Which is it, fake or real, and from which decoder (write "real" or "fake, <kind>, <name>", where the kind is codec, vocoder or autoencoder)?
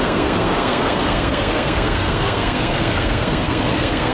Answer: fake, codec, SNAC